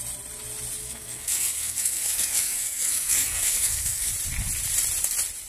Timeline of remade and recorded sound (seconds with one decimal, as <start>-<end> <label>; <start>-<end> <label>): 0.0-0.8 recorded; 0.8-4.1 remade; 4.1-5.5 recorded

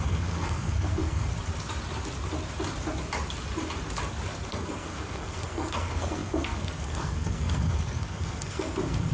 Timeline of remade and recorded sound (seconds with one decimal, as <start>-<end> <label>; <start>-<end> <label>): 0.0-1.3 remade; 1.3-4.5 recorded; 4.5-9.1 remade

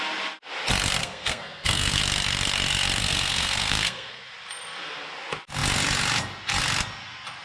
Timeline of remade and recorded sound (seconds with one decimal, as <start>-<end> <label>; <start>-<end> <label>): 0.0-1.0 recorded; 1.0-2.0 remade; 2.0-3.0 recorded; 3.0-4.2 remade; 4.2-7.4 recorded